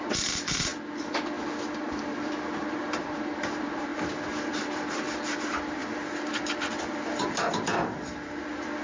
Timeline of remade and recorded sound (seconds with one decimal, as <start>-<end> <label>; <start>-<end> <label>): 0.0-0.7 remade; 0.7-2.0 recorded; 2.0-5.8 remade; 5.8-6.7 recorded; 6.7-8.8 remade